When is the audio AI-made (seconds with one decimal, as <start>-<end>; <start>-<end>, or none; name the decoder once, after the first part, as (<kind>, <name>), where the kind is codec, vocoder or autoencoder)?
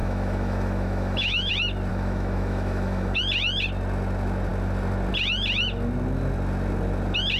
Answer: 0.0-1.5 (autoencoder, DAC-VAE); 1.9-3.2